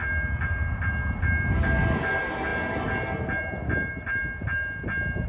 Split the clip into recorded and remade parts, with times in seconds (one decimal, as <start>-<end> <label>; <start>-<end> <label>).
0.0-5.3 recorded